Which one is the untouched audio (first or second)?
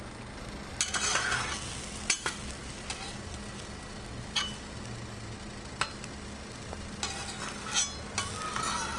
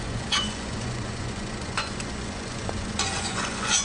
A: first